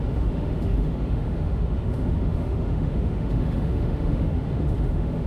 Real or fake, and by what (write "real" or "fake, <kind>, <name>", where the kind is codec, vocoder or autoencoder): fake, autoencoder, DAC-VAE